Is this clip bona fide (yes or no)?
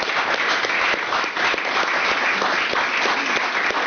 yes